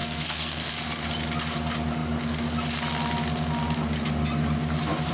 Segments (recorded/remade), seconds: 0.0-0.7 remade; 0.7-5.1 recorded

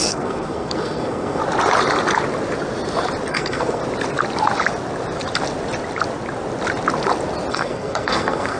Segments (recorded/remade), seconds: 0.0-1.4 remade; 1.4-3.3 recorded; 3.3-3.8 remade; 3.8-7.5 recorded; 7.5-8.6 remade

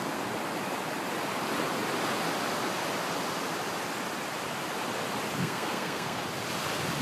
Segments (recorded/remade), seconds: 0.0-5.4 recorded; 5.4-6.2 remade; 6.2-7.0 recorded